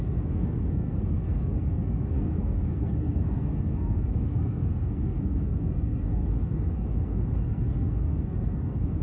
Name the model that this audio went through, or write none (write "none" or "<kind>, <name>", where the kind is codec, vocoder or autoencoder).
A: codec, SNAC